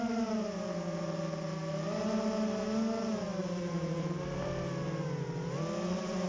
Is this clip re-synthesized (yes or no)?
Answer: no